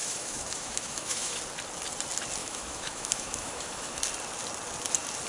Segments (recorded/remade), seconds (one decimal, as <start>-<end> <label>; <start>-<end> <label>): 0.0-1.4 remade; 1.4-2.4 recorded; 2.4-4.0 remade; 4.0-5.3 recorded